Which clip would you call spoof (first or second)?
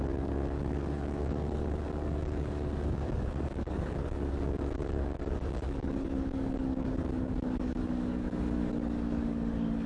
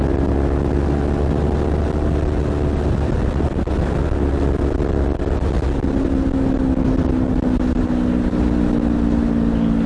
first